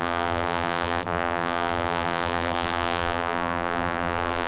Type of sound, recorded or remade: remade